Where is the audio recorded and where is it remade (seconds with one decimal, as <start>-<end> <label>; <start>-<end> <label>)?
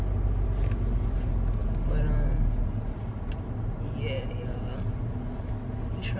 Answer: 0.0-6.2 recorded